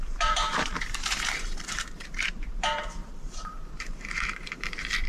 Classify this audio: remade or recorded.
remade